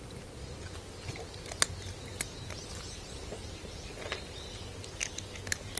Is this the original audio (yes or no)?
yes